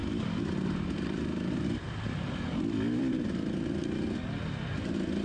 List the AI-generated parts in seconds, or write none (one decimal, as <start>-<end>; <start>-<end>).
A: 0.0-3.1